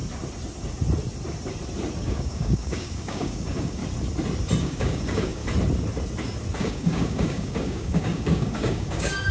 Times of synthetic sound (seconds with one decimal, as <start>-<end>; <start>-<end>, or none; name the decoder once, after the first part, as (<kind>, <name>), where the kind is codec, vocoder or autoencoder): 2.0-3.8 (codec, DAC); 4.6-5.4; 6.6-9.3